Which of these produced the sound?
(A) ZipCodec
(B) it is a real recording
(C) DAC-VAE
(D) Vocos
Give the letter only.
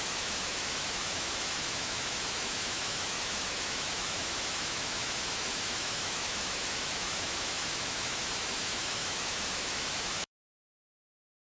C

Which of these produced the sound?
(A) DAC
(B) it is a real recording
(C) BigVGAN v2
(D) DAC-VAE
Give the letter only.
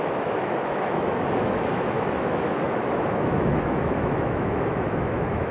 D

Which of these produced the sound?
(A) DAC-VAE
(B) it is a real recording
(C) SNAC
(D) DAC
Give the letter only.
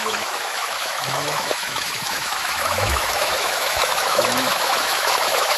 A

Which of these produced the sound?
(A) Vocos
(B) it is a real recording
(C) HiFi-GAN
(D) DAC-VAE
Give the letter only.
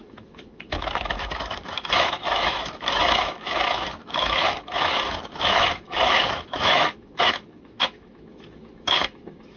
D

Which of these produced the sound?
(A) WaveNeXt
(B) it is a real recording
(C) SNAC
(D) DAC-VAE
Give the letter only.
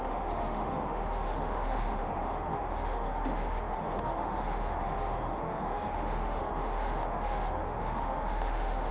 D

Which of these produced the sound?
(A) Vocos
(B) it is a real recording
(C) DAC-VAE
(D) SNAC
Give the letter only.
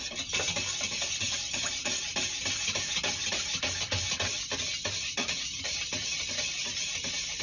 B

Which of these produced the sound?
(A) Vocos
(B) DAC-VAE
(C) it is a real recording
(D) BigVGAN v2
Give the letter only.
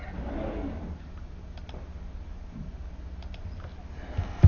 C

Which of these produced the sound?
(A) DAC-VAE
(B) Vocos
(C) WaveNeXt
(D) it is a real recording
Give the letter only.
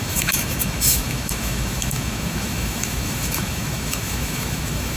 A